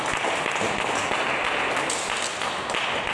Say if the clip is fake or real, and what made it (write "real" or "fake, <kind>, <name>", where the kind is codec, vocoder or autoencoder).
real